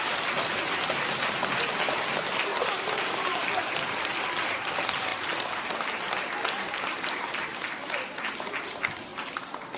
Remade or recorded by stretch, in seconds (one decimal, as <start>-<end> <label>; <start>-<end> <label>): 0.0-5.1 remade; 5.1-8.7 recorded; 8.7-9.1 remade; 9.1-9.8 recorded